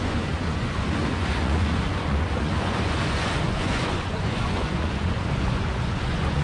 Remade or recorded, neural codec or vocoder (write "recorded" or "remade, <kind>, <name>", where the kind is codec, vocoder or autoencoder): remade, vocoder, Vocos